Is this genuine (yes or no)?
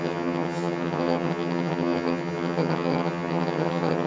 no